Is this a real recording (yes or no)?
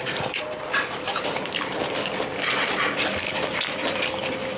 yes